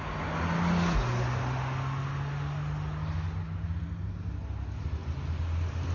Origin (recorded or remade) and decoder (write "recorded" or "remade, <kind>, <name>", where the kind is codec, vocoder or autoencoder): recorded